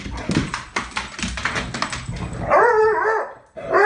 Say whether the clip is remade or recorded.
recorded